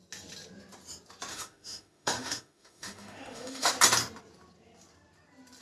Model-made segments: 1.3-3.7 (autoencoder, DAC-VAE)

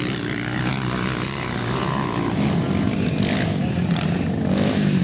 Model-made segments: none

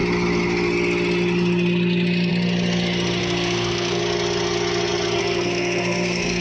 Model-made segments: 3.2-4.0 (codec, SNAC); 5.2-6.4

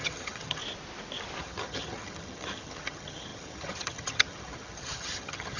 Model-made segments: 0.0-0.6 (vocoder, HiFi-GAN); 1.4-5.6

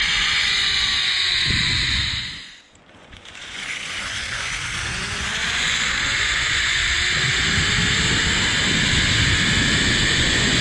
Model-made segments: 0.0-6.8 (vocoder, Vocos); 10.1-10.6

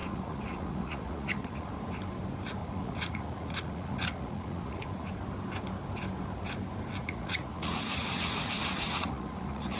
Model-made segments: 0.0-1.7 (vocoder, Vocos); 2.6-5.1; 7.0-9.8

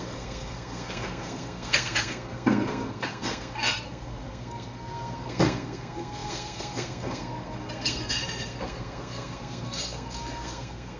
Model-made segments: 0.0-11.0 (codec, SNAC)

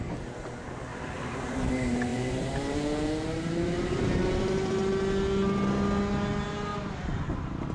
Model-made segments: 0.9-1.7 (vocoder, BigVGAN v2); 2.1-4.7